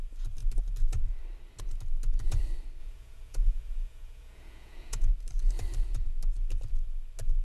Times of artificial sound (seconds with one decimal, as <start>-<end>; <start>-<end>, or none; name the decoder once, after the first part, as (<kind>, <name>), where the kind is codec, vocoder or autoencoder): 2.8-5.1 (vocoder, Vocos)